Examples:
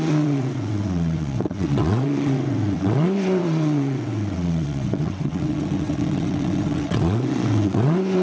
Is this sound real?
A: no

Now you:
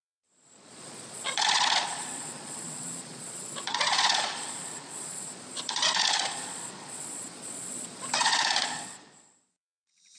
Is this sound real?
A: no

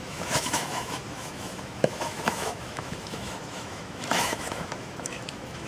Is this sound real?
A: no